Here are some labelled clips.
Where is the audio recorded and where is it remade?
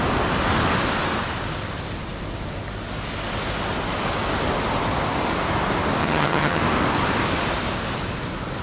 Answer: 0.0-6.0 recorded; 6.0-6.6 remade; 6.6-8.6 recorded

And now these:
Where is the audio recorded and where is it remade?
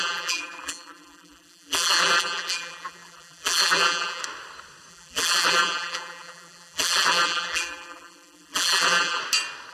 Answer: 0.0-4.2 remade; 4.2-4.9 recorded; 4.9-9.2 remade; 9.2-9.7 recorded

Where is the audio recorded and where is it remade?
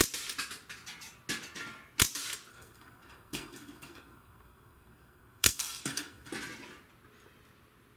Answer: 0.0-2.5 recorded; 2.5-6.3 remade; 6.3-8.0 recorded